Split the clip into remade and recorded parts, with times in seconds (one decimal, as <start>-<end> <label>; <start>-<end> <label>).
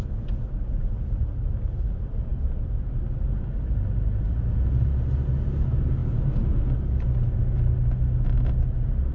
0.0-9.1 recorded